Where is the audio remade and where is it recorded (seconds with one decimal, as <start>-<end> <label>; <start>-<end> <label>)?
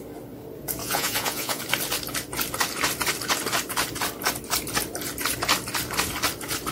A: 0.0-0.8 recorded; 0.8-1.6 remade; 1.6-6.7 recorded